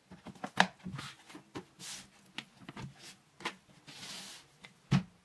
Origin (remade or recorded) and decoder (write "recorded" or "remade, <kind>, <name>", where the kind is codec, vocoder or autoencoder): recorded